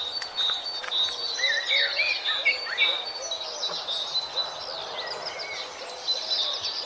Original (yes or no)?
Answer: yes